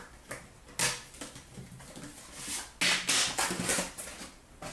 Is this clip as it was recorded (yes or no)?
yes